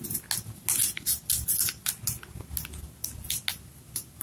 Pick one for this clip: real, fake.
real